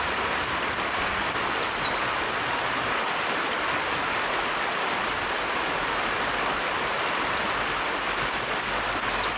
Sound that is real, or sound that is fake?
real